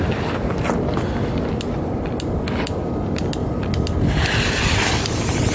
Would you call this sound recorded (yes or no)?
yes